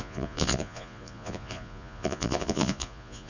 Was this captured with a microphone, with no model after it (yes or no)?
no